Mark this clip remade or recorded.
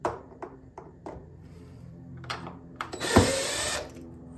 remade